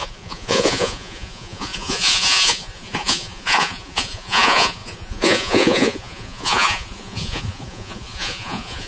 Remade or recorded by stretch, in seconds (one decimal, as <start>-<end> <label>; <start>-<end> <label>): 0.0-8.9 remade